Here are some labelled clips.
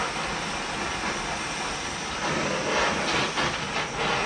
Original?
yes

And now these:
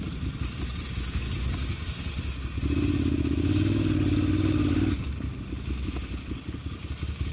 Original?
yes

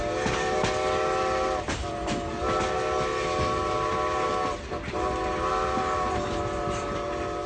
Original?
yes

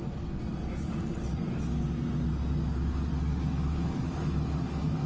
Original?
yes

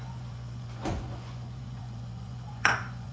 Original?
no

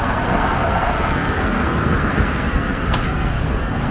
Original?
no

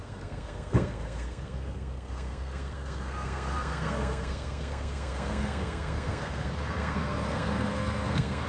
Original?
no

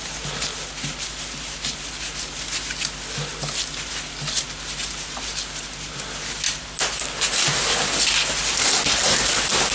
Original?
yes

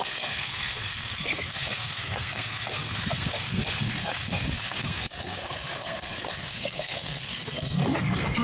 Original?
no